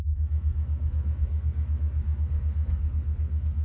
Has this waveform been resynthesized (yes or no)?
yes